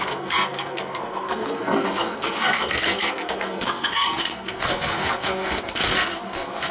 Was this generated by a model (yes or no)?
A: yes